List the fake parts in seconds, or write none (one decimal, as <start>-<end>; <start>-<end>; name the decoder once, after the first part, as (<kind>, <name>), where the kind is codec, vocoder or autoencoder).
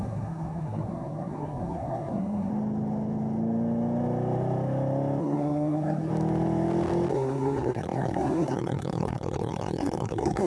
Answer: 0.0-2.5 (codec, SNAC); 5.2-6.1; 7.1-10.5